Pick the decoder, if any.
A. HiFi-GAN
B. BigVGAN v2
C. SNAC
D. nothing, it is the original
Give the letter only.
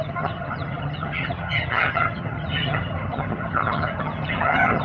A